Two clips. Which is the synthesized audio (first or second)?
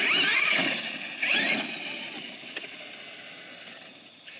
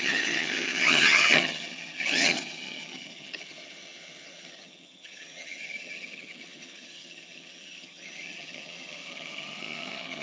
second